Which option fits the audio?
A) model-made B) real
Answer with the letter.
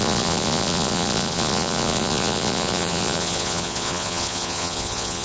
A